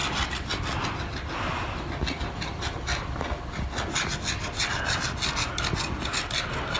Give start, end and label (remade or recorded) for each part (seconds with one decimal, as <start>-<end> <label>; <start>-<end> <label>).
0.0-6.8 recorded